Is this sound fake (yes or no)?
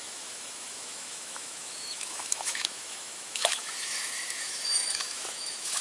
yes